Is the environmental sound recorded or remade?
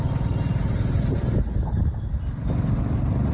recorded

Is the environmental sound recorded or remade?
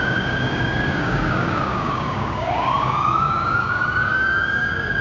remade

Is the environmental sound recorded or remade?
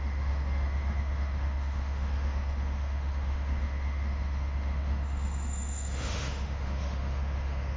remade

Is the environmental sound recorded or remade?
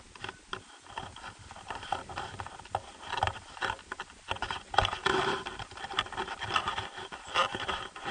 recorded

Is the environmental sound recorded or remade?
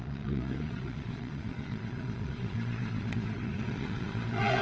remade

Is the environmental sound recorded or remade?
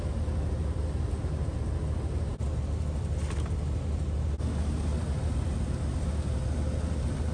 recorded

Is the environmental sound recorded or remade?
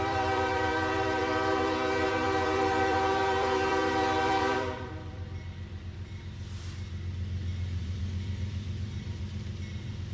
remade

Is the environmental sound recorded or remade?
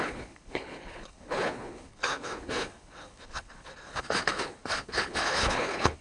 remade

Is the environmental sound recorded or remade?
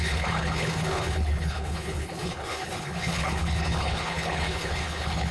remade